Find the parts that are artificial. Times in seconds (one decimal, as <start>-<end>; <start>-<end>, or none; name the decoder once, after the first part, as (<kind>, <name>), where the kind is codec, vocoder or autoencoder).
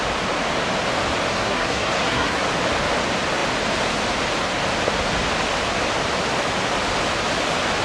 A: 1.3-2.4 (codec, SNAC)